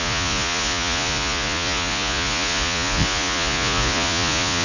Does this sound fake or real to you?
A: fake